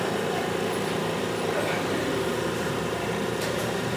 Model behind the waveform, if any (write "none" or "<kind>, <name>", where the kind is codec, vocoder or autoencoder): vocoder, BigVGAN v2